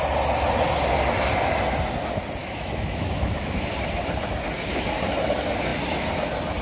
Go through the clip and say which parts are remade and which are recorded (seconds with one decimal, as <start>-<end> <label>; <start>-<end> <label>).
0.0-2.4 recorded; 2.4-3.7 remade; 3.7-6.6 recorded